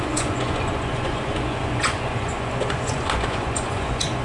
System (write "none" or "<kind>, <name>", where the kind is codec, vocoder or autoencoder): vocoder, Vocos